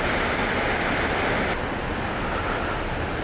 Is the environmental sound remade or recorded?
recorded